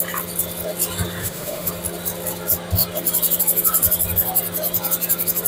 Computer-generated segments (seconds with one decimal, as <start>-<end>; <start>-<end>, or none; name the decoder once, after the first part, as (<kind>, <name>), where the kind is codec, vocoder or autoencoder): 1.2-1.7 (autoencoder, DAC-VAE)

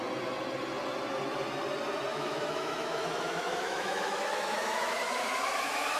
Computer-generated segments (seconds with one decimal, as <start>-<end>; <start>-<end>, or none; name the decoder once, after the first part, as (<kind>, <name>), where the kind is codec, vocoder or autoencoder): 2.1-6.0 (autoencoder, DAC-VAE)

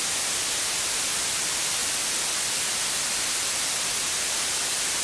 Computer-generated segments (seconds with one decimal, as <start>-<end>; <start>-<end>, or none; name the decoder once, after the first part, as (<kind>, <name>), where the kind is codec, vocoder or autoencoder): none

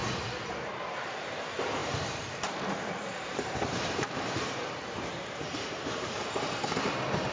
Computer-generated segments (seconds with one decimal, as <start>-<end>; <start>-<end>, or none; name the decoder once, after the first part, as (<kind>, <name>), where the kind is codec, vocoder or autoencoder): 0.0-7.3 (vocoder, BigVGAN v2)

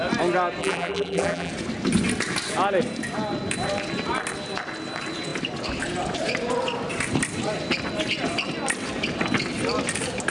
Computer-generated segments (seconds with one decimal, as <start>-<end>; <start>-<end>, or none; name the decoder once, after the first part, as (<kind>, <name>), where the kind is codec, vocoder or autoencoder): 0.6-1.5 (vocoder, BigVGAN v2)

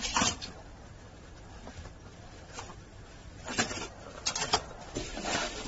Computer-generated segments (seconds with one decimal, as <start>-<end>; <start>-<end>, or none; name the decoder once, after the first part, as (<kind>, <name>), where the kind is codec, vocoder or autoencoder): none